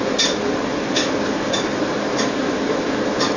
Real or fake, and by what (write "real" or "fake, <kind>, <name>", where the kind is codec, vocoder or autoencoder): real